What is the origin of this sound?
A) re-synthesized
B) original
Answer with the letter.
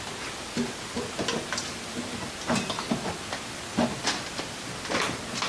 B